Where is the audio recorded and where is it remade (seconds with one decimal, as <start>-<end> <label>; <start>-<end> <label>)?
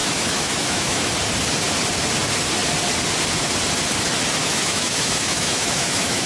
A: 0.0-1.1 remade; 1.1-4.4 recorded; 4.4-6.3 remade